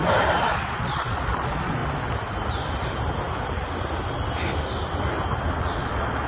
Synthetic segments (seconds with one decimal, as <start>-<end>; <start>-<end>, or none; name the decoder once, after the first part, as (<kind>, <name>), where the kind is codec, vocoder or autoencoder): 0.5-1.8 (vocoder, Vocos); 5.6-6.3